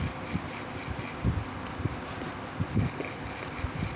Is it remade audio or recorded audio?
remade